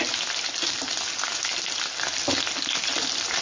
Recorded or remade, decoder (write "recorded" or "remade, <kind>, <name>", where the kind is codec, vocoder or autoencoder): recorded